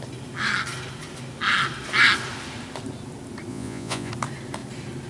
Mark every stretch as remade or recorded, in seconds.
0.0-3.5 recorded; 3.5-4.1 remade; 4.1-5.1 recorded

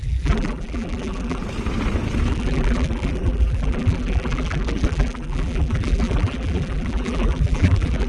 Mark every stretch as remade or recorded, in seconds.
0.0-1.4 remade; 1.4-2.3 recorded; 2.3-8.1 remade

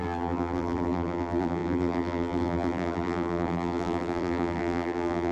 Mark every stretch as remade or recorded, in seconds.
0.0-5.3 remade

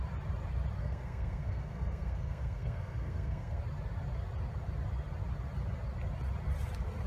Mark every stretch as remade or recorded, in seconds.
0.0-0.8 recorded; 0.8-3.6 remade; 3.6-7.1 recorded

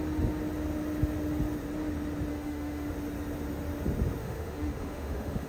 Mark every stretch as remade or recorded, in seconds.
0.0-2.3 recorded; 2.3-2.9 remade; 2.9-4.2 recorded; 4.2-5.5 remade